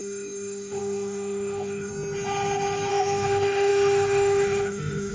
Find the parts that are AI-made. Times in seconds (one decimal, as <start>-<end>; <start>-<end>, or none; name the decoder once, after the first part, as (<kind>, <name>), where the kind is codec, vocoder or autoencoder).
0.0-1.9 (autoencoder, DAC-VAE); 2.9-5.1